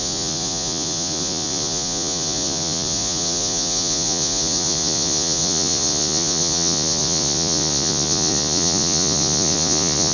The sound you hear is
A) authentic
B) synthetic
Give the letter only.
B